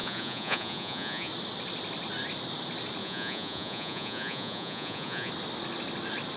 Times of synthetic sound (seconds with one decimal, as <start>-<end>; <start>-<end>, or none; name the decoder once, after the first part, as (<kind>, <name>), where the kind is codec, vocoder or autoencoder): 0.0-1.3 (vocoder, Vocos); 3.0-5.3